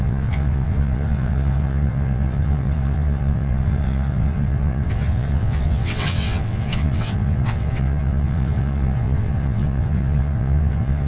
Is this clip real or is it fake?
fake